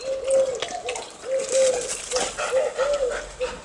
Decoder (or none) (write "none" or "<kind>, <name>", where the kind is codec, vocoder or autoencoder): none